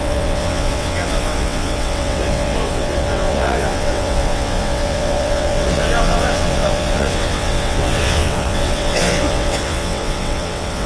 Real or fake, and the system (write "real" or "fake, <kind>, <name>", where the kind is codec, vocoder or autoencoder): fake, vocoder, WaveNeXt